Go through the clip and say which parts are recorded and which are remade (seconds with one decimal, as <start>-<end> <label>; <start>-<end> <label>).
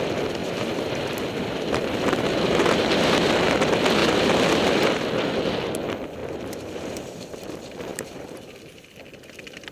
0.0-0.4 recorded; 0.4-3.3 remade; 3.3-4.0 recorded; 4.0-4.6 remade; 4.6-6.2 recorded; 6.2-7.2 remade; 7.2-7.9 recorded; 7.9-8.5 remade; 8.5-9.7 recorded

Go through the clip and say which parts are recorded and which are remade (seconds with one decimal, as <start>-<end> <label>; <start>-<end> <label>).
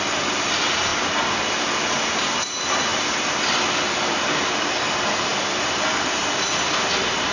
0.0-7.3 recorded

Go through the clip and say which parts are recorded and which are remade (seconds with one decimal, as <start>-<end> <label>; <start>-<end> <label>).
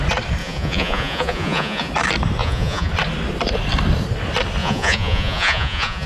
0.0-0.4 recorded; 0.4-1.9 remade; 1.9-2.4 recorded; 2.4-2.9 remade; 2.9-4.6 recorded; 4.6-6.1 remade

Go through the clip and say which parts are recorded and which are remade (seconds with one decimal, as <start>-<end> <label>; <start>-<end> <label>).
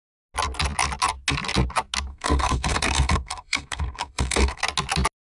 0.0-2.1 recorded; 2.1-4.6 remade; 4.6-5.4 recorded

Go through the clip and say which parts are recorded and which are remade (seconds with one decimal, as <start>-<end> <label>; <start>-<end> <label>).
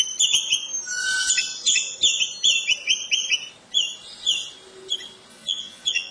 0.0-5.3 recorded; 5.3-6.1 remade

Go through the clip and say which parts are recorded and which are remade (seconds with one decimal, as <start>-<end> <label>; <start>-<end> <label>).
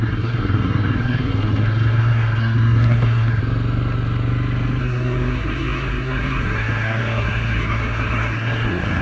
0.0-3.4 remade; 3.4-4.8 recorded; 4.8-9.0 remade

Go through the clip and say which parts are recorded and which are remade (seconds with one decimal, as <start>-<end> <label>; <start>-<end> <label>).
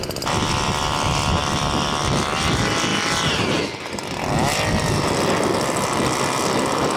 0.0-7.0 recorded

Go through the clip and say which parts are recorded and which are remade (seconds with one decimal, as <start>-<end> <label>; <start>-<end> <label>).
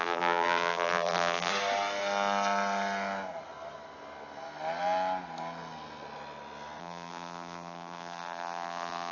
0.0-1.5 remade; 1.5-6.8 recorded; 6.8-9.1 remade